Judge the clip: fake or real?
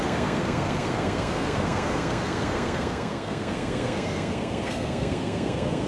fake